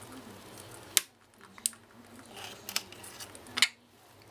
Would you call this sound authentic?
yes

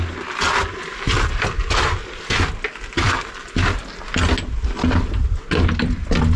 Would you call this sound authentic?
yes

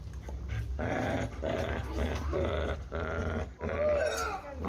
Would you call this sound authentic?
yes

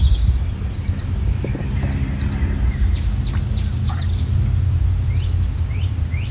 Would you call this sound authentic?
yes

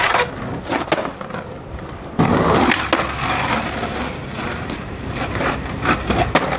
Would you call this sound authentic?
yes